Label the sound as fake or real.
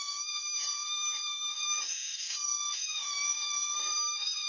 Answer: fake